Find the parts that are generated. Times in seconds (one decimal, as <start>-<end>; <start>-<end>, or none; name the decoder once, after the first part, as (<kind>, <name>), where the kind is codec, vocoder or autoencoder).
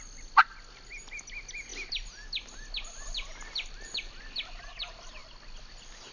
none